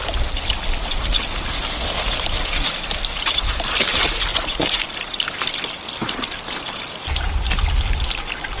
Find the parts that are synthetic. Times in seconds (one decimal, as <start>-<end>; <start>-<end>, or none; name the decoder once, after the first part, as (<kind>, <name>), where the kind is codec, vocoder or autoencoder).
4.3-4.9 (vocoder, Vocos)